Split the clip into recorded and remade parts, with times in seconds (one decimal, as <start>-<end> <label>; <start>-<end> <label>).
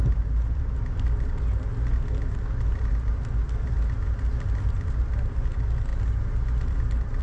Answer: 0.0-7.2 recorded